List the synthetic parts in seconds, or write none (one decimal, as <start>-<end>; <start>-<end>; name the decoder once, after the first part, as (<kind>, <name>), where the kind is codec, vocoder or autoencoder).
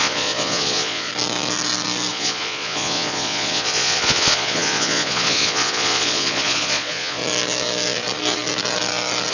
0.0-1.1 (vocoder, Vocos); 2.1-7.2